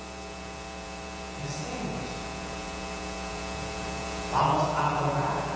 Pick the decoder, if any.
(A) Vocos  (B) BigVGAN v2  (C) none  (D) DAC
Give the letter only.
A